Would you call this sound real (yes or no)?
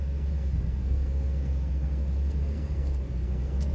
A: no